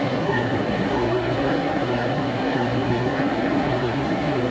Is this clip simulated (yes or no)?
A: yes